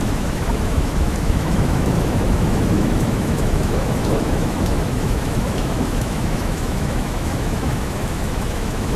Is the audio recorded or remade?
remade